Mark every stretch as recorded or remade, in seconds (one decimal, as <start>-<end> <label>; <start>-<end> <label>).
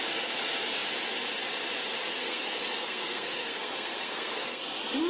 0.0-2.2 recorded; 2.2-4.6 remade; 4.6-5.1 recorded